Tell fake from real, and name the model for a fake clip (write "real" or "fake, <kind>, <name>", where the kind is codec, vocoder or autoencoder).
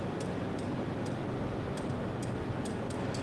real